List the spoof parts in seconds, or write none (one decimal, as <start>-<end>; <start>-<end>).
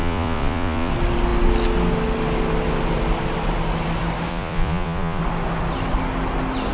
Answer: 0.0-0.9; 4.3-5.2